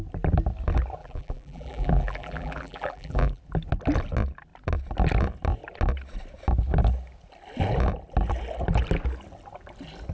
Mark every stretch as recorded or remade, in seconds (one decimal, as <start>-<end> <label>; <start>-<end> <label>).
0.0-1.0 recorded; 1.0-3.4 remade; 3.4-10.1 recorded